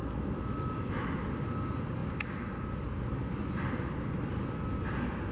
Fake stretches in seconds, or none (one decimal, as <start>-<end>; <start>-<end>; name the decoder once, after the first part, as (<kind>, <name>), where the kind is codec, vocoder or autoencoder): 0.0-1.1 (autoencoder, DAC-VAE)